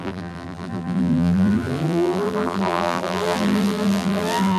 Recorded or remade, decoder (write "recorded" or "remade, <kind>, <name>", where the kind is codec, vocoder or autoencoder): remade, vocoder, BigVGAN v2